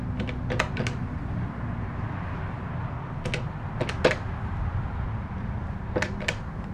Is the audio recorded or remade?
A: recorded